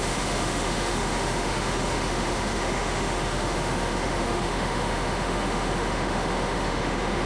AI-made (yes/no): yes